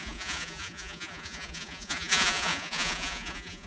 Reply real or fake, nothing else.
fake